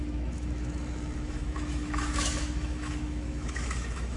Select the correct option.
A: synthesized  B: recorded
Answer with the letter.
A